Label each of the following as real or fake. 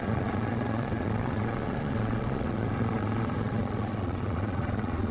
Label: fake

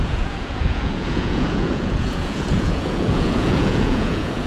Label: fake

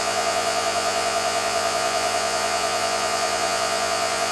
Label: fake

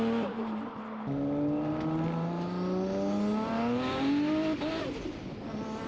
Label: real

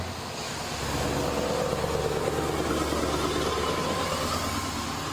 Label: real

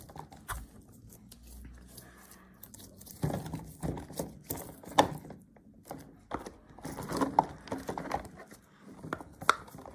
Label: real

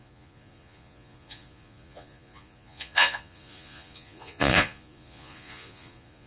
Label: fake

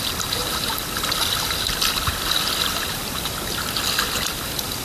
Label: real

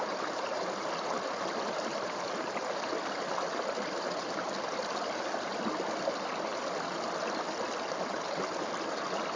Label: real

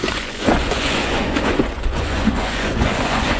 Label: fake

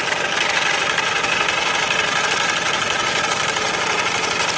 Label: real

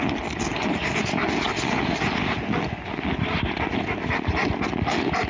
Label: real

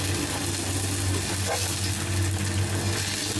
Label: real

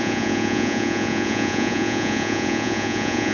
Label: fake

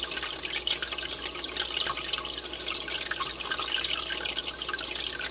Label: real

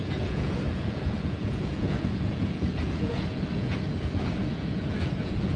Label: fake